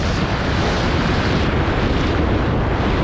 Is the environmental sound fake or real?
real